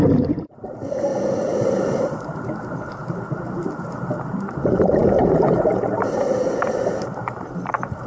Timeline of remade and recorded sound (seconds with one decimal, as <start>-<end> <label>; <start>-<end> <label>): 0.0-8.1 remade